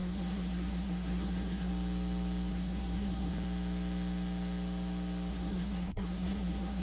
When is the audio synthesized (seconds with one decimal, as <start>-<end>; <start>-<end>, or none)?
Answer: 0.0-1.7; 2.5-3.3; 5.3-6.8